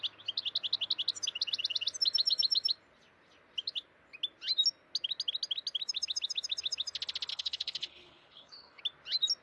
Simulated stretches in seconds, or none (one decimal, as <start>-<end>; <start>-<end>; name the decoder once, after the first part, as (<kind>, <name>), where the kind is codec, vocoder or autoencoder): 7.3-8.8 (codec, HILCodec)